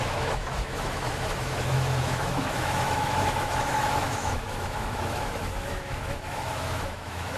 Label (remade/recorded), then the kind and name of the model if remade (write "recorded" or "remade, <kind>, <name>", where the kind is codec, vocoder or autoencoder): remade, autoencoder, DAC-VAE